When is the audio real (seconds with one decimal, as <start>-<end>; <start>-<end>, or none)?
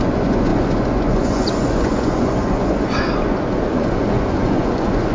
none